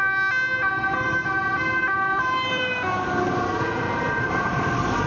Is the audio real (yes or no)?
no